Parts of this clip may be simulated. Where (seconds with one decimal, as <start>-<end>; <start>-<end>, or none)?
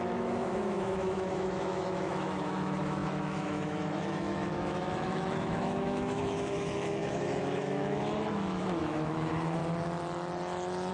0.0-9.6